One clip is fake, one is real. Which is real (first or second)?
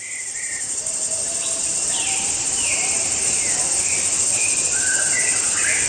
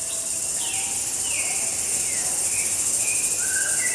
second